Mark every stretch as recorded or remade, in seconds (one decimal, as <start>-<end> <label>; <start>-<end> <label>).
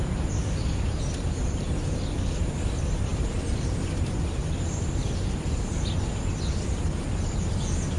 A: 0.0-3.1 recorded; 3.1-3.9 remade; 3.9-5.0 recorded; 5.0-5.8 remade; 5.8-8.0 recorded